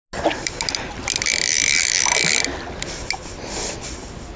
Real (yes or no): yes